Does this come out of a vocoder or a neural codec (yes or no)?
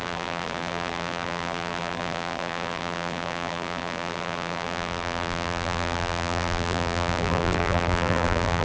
yes